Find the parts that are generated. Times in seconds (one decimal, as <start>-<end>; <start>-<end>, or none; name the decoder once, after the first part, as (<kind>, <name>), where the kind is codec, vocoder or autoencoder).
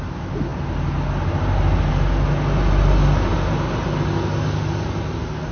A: none